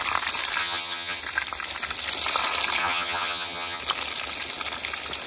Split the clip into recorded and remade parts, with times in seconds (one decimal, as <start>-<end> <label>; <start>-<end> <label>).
0.0-0.6 recorded; 0.6-1.2 remade; 1.2-2.8 recorded; 2.8-3.8 remade; 3.8-5.3 recorded